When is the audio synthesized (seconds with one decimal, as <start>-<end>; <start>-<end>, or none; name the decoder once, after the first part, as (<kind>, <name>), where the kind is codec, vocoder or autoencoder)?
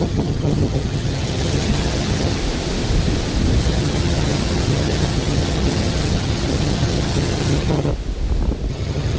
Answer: 0.0-2.4 (vocoder, HiFi-GAN); 3.6-7.9; 8.7-9.2